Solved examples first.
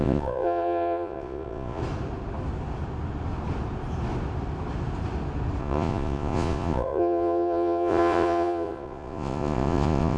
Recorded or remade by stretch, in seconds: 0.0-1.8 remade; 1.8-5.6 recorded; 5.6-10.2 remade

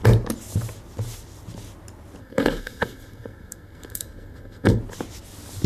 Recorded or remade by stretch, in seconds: 0.0-2.2 recorded; 2.2-4.8 remade; 4.8-5.7 recorded

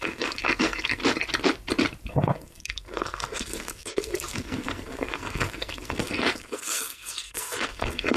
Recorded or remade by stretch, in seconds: 0.0-1.0 remade; 1.0-2.1 recorded; 2.1-8.2 remade

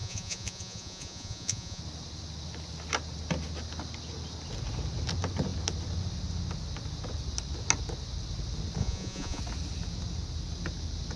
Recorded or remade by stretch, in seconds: 0.0-1.8 remade; 1.8-8.8 recorded; 8.8-9.4 remade; 9.4-11.2 recorded

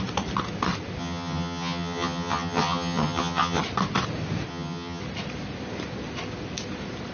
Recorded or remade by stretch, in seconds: 0.0-1.0 recorded; 1.0-3.6 remade; 3.6-4.5 recorded; 4.5-5.0 remade; 5.0-7.1 recorded

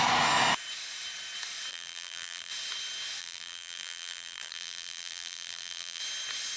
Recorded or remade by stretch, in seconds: 0.0-1.7 recorded; 1.7-2.5 remade; 2.5-3.2 recorded; 3.2-6.0 remade; 6.0-6.6 recorded

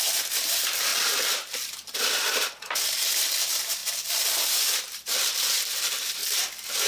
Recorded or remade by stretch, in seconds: 0.0-3.8 remade; 3.8-4.8 recorded; 4.8-6.2 remade; 6.2-6.9 recorded